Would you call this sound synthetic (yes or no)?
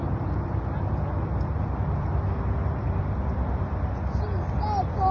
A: no